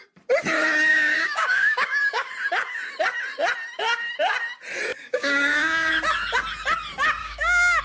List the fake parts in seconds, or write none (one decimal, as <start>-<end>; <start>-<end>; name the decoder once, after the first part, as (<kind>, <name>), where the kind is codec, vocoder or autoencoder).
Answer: 0.9-2.3 (codec, DAC); 4.9-5.9; 7.2-7.8